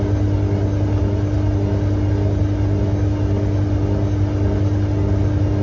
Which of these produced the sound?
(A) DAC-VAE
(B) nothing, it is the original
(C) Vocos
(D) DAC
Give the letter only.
B